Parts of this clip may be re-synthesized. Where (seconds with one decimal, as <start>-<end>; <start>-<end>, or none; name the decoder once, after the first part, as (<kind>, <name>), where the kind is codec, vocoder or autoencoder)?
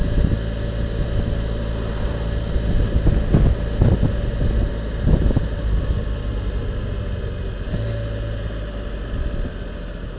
none